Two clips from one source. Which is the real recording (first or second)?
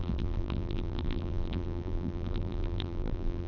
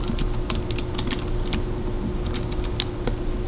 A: second